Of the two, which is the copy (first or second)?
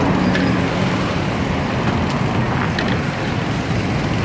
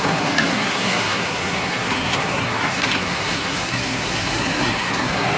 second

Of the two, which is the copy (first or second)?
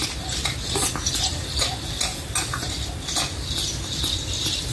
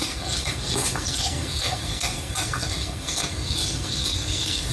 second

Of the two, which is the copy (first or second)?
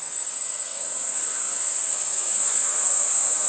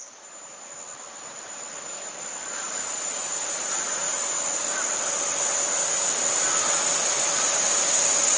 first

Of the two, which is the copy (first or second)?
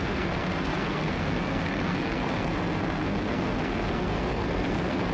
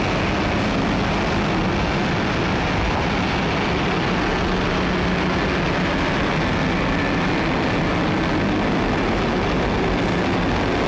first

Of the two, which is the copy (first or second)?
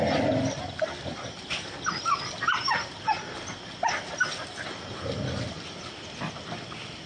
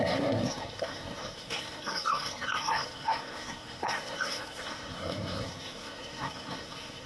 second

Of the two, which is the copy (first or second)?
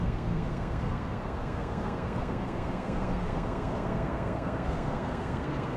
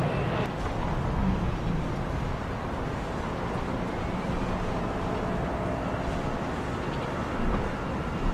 first